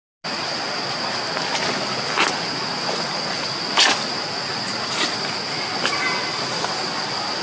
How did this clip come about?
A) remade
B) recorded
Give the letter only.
B